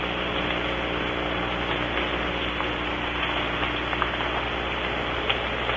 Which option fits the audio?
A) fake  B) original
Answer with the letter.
B